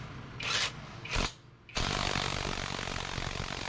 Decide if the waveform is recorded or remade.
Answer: recorded